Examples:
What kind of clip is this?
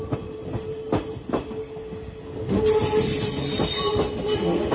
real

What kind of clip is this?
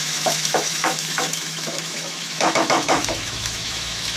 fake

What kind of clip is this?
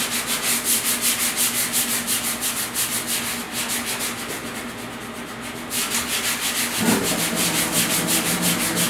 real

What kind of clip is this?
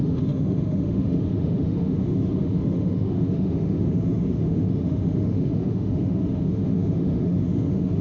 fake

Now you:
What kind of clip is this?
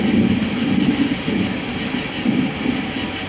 real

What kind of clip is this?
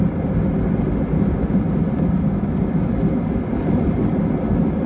real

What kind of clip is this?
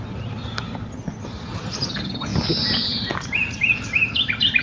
real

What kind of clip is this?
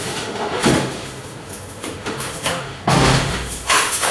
fake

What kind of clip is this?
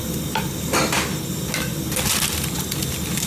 real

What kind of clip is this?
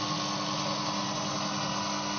real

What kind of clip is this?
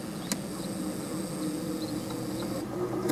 real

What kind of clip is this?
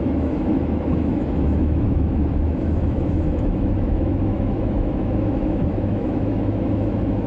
fake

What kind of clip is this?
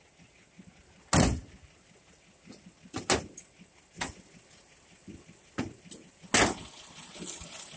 real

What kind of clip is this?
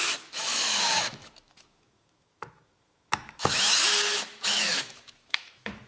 fake